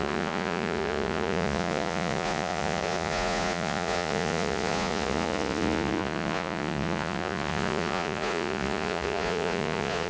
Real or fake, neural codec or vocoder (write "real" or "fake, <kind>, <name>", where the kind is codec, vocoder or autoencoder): fake, vocoder, Vocos